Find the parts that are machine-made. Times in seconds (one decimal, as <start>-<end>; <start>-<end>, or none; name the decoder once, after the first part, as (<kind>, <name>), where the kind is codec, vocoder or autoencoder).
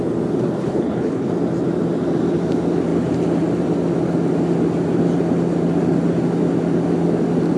0.6-1.3 (codec, HILCodec)